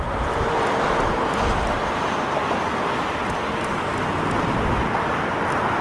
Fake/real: real